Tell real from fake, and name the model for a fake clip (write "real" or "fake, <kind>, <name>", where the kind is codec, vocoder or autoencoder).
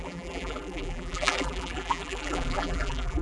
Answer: fake, vocoder, BigVGAN v2